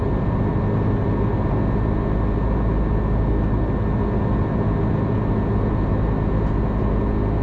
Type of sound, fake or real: real